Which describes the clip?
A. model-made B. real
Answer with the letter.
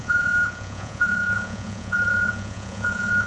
A